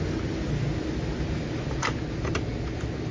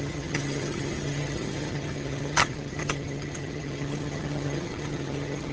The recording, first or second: first